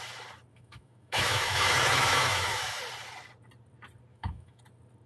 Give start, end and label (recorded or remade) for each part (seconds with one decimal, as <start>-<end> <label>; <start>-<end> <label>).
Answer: 0.0-0.5 recorded; 0.5-2.8 remade; 2.8-4.1 recorded; 4.1-4.6 remade; 4.6-5.1 recorded